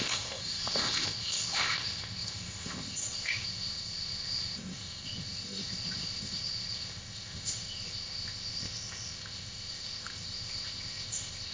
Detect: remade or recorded remade